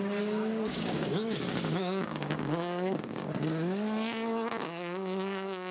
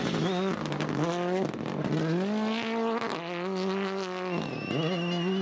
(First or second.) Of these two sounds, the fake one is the first